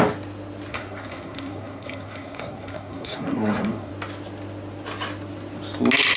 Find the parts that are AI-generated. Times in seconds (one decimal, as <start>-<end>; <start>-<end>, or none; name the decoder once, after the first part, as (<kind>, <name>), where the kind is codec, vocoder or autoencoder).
0.7-3.9 (codec, SNAC)